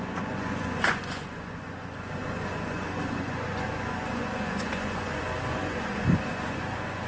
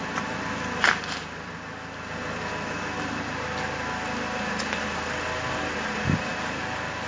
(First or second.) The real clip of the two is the second